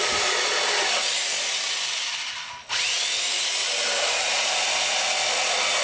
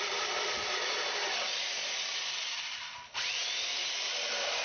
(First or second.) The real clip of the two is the first